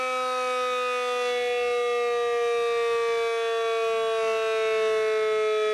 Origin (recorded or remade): recorded